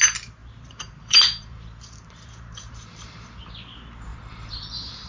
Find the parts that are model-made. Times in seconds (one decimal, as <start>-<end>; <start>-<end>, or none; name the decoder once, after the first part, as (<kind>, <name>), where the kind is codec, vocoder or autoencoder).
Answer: 0.4-3.5 (vocoder, BigVGAN v2); 4.1-5.1